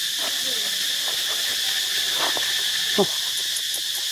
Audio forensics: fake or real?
real